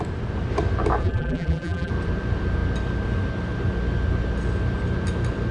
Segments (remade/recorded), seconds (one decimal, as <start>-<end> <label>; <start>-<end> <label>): 0.0-1.0 recorded; 1.0-1.9 remade; 1.9-5.5 recorded